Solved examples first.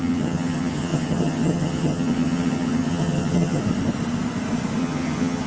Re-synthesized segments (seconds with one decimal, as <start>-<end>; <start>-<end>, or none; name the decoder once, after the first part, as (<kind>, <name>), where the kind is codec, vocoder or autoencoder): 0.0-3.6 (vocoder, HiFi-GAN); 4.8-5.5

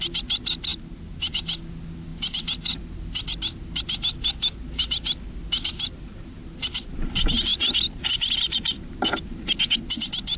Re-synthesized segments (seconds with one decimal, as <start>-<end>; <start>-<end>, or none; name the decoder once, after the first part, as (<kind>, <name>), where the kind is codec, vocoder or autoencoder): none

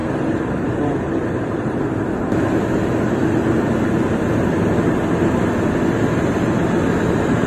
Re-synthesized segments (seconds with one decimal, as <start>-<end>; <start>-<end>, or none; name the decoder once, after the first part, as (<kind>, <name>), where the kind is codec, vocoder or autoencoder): 0.0-1.8 (vocoder, BigVGAN v2)

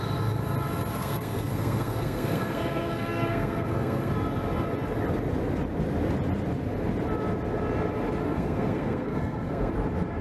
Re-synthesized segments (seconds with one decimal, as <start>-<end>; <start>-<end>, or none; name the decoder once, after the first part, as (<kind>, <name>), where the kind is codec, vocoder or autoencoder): 1.0-4.1 (codec, SNAC); 8.2-9.7